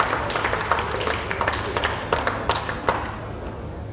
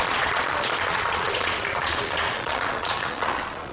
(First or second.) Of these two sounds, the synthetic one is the second